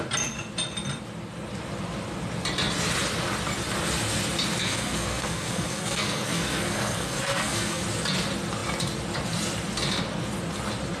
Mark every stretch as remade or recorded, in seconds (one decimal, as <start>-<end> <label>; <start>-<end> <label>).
0.0-4.6 recorded; 4.6-7.8 remade; 7.8-11.0 recorded